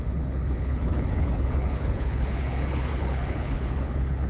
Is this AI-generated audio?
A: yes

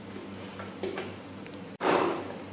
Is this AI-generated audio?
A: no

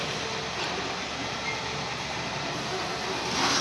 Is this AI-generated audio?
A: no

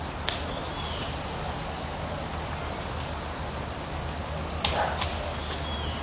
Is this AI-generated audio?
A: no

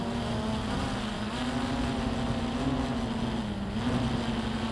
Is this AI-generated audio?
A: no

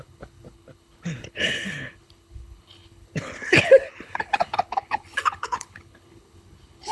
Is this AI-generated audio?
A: yes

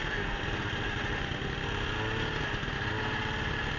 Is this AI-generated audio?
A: no